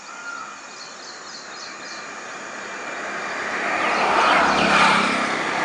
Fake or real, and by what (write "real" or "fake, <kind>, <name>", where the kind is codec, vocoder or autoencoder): real